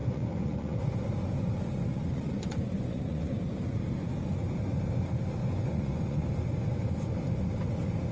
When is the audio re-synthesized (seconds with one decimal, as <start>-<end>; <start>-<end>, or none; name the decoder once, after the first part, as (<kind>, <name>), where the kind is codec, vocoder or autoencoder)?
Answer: 0.0-0.9 (vocoder, Vocos); 1.9-3.4; 5.4-6.3